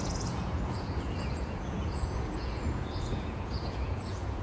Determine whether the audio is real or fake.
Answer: fake